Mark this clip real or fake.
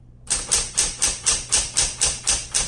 real